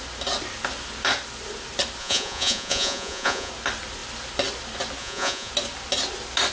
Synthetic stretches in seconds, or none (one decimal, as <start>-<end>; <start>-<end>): 2.0-3.5; 5.0-5.5